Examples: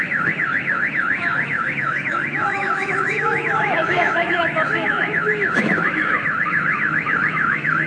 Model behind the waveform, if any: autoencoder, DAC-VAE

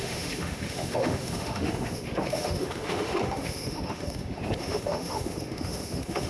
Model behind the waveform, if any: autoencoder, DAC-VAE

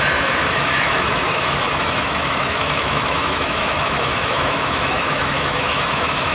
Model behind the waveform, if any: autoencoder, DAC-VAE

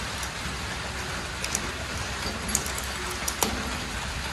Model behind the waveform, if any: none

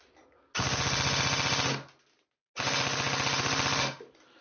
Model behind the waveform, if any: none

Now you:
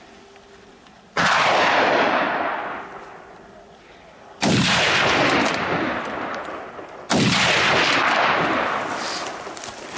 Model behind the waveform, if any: none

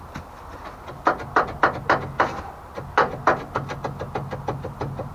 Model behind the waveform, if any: none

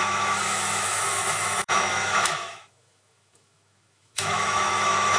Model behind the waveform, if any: autoencoder, DAC-VAE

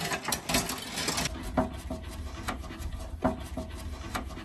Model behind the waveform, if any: none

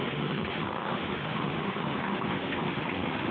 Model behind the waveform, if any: autoencoder, DAC-VAE